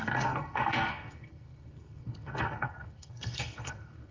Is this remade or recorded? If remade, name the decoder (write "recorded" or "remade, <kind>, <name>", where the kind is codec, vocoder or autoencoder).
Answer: remade, codec, SNAC